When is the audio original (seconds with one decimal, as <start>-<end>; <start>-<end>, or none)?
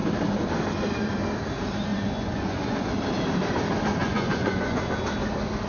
0.0-1.9; 2.9-4.0; 4.8-5.7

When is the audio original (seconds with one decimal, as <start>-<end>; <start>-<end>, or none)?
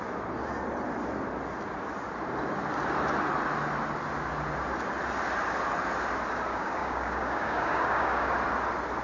0.0-6.5; 8.3-9.0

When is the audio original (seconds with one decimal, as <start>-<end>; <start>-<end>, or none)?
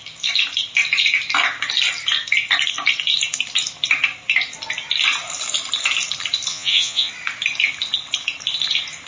0.0-6.5; 7.1-9.1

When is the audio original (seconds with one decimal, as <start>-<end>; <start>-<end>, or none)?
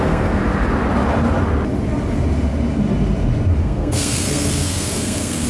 0.4-3.6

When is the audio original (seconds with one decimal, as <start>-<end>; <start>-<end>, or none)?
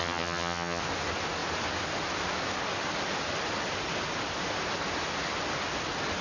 0.8-6.2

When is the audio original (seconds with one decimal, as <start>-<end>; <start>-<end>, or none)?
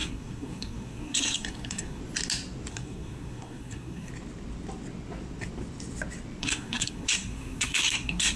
2.0-2.7; 4.1-6.4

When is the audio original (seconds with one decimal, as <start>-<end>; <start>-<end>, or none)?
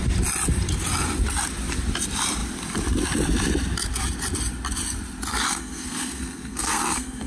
0.0-5.3